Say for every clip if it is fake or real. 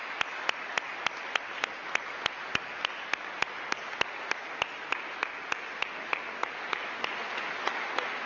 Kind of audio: real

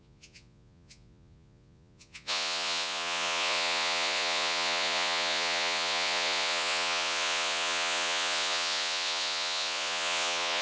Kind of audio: fake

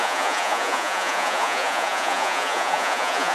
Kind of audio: fake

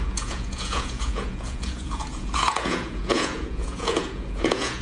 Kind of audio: fake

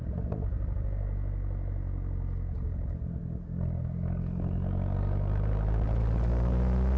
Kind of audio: real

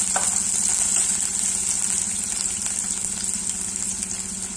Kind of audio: real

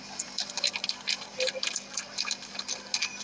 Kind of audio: real